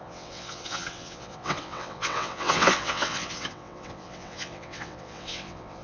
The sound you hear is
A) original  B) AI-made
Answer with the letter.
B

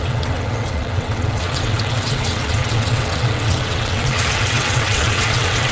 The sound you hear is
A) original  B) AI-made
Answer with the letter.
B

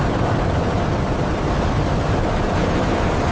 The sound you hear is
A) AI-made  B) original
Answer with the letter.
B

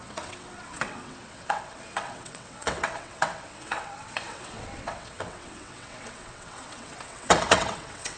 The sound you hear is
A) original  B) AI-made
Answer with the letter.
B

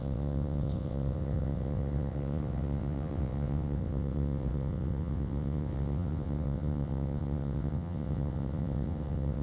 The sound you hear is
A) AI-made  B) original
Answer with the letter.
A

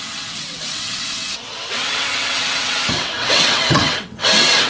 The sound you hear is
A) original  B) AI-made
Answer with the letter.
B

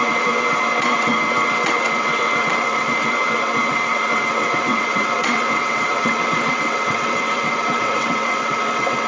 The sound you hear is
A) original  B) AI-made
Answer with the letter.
B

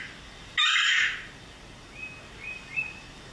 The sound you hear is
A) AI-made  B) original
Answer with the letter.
B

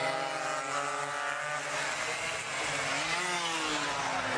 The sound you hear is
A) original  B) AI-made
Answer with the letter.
A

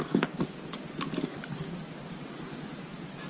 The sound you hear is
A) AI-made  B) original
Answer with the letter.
B